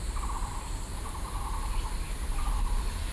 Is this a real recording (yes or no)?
yes